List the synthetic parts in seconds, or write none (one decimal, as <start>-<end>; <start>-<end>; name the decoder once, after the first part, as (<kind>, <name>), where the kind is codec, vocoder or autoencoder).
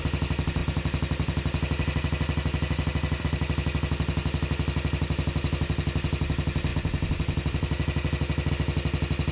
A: none